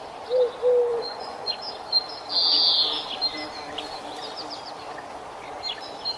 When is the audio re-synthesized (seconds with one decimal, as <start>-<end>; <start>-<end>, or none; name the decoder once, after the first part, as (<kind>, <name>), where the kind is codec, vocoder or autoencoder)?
0.9-1.5 (vocoder, Vocos)

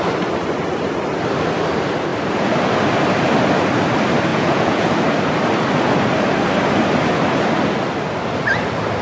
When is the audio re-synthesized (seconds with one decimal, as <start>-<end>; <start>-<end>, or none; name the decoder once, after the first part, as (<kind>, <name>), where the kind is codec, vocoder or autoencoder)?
4.3-4.9 (vocoder, Vocos)

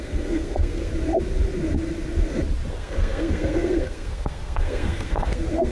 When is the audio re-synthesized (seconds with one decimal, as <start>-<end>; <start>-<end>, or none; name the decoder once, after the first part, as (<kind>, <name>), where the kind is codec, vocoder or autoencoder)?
0.0-0.9 (codec, SNAC); 2.7-5.7

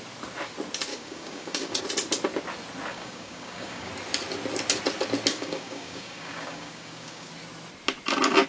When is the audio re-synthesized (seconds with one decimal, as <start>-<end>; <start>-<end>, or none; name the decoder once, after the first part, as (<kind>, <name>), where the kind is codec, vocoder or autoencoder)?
0.9-1.8 (codec, DAC); 2.9-3.9; 5.3-7.3

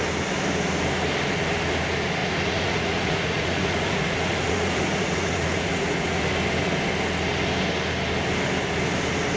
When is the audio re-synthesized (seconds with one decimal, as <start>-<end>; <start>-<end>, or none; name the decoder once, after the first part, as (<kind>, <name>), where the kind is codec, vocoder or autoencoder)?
2.2-6.2 (vocoder, Vocos)